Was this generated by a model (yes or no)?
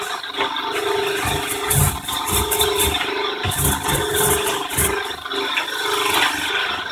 no